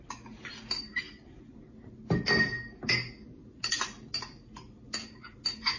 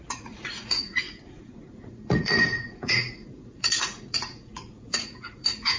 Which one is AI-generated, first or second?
second